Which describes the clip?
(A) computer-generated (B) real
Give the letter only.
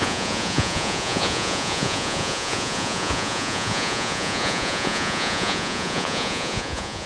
A